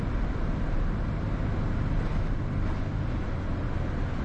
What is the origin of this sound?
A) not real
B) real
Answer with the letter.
B